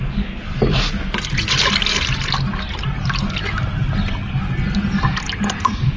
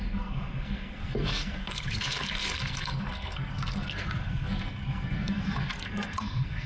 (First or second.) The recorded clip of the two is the first